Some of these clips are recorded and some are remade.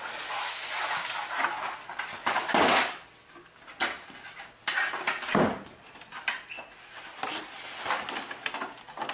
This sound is recorded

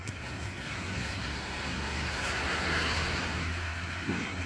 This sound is remade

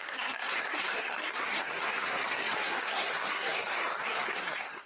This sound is remade